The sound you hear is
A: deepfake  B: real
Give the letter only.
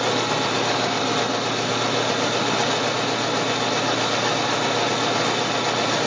B